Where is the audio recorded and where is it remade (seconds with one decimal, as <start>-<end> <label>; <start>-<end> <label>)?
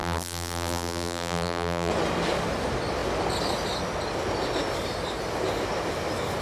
0.0-1.9 remade; 1.9-6.4 recorded